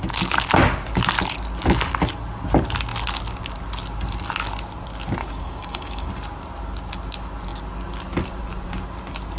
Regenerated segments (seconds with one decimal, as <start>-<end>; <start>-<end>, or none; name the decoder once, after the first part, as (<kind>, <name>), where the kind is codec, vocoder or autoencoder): 5.2-6.1 (codec, DAC)